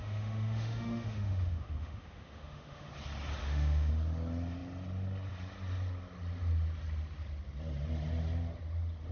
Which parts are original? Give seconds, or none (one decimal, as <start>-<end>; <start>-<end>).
2.9-3.4; 3.9-9.1